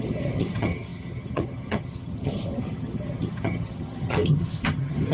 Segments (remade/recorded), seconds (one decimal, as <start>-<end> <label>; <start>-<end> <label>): 0.0-5.1 remade